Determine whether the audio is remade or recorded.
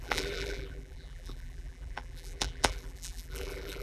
remade